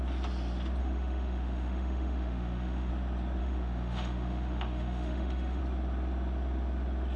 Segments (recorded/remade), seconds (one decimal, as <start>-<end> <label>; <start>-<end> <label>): 0.0-0.8 recorded; 0.8-2.9 remade; 2.9-3.4 recorded; 3.4-5.6 remade; 5.6-7.2 recorded